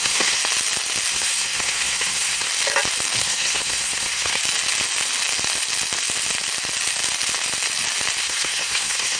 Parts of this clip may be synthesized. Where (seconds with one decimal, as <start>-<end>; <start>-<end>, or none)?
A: 0.0-0.4; 1.1-2.5; 3.2-4.4; 8.2-9.2